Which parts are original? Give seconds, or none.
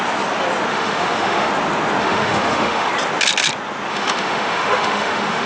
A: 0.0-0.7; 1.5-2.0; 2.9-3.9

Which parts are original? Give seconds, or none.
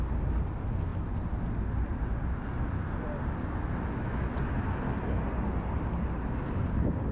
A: 0.0-7.1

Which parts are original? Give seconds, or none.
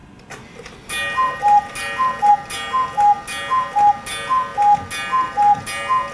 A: 0.0-6.1